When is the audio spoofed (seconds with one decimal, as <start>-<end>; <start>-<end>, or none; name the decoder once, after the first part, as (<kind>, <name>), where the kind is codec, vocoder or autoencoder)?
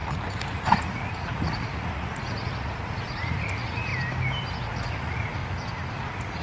0.0-3.9 (vocoder, Vocos); 4.7-5.4; 5.9-6.4